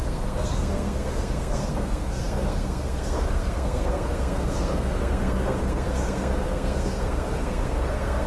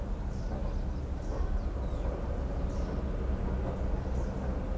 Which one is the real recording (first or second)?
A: second